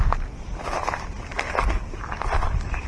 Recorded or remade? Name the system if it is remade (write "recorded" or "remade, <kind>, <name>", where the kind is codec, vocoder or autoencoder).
recorded